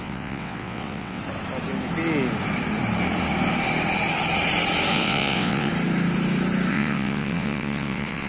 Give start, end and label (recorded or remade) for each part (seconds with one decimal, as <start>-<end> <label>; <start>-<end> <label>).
0.0-1.2 remade; 1.2-4.9 recorded; 4.9-5.7 remade; 5.7-6.7 recorded; 6.7-8.3 remade